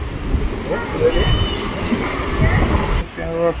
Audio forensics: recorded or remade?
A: recorded